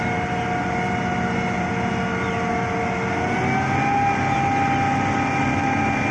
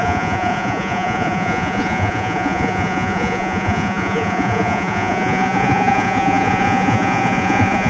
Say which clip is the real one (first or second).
first